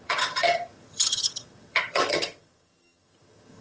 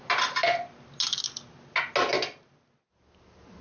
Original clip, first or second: second